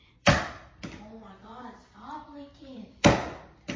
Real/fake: fake